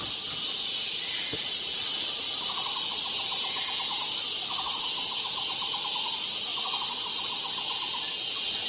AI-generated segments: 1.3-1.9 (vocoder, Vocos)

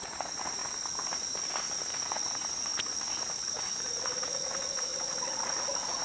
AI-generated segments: 0.0-0.6 (vocoder, Vocos); 1.9-6.0